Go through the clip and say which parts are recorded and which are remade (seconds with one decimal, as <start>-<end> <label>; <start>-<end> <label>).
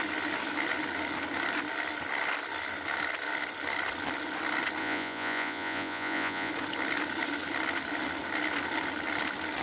0.0-4.8 recorded; 4.8-6.5 remade; 6.5-9.6 recorded